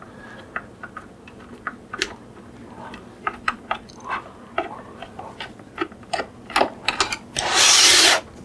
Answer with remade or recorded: recorded